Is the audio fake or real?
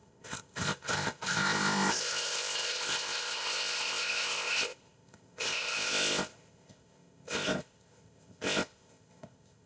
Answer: fake